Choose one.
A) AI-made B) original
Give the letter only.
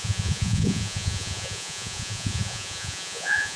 A